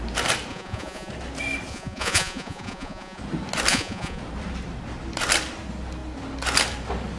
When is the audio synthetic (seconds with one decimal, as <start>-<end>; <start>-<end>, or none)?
0.5-1.1; 1.7-3.2; 3.7-4.2